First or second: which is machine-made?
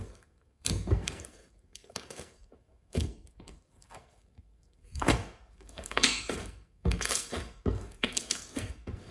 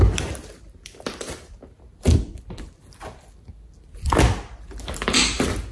first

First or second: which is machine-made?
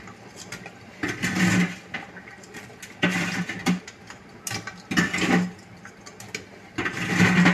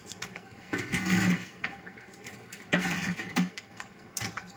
second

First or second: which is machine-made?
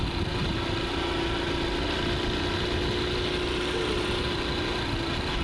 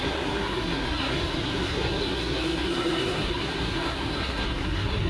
second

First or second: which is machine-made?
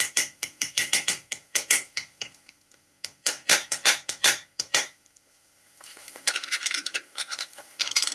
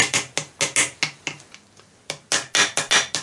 first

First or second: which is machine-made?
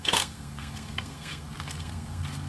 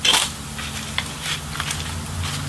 first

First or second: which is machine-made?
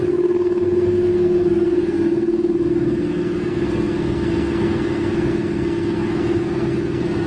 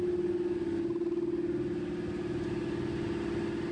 first